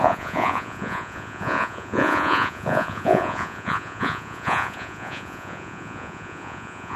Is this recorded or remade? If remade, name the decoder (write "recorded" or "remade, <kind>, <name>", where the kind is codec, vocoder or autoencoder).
remade, vocoder, Vocos